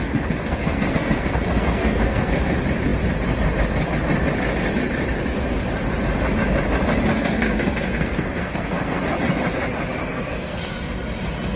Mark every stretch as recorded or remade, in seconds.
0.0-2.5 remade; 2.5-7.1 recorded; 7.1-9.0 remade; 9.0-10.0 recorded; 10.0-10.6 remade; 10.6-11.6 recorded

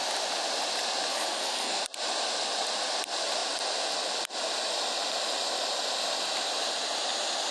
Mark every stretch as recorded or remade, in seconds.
0.0-1.1 recorded; 1.1-1.8 remade; 1.8-7.5 recorded

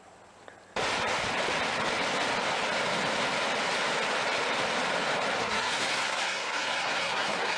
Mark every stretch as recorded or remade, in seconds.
0.0-5.4 recorded; 5.4-7.6 remade